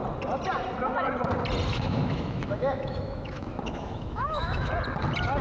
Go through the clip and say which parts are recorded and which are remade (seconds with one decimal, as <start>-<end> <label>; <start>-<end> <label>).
0.0-1.7 recorded; 1.7-4.7 remade; 4.7-5.4 recorded